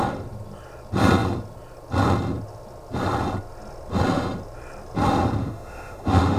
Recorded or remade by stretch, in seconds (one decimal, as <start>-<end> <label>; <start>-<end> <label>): 0.0-5.4 recorded; 5.4-6.4 remade